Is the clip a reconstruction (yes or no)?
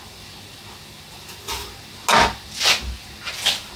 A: no